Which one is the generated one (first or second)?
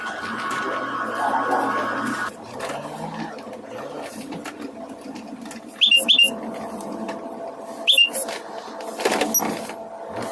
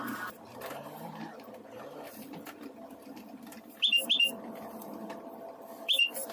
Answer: second